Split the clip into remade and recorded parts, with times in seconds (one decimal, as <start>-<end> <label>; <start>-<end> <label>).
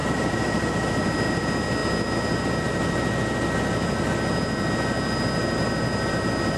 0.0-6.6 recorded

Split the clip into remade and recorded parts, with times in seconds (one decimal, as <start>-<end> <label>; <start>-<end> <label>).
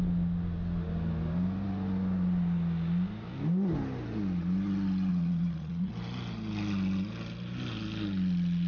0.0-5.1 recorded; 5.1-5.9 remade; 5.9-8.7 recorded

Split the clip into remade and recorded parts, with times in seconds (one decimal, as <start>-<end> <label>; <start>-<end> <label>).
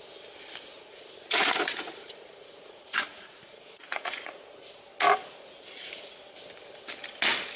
0.0-0.7 recorded; 0.7-4.5 remade; 4.5-5.2 recorded; 5.2-6.2 remade; 6.2-7.6 recorded